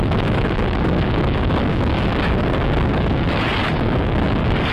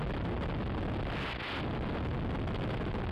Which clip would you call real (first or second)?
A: second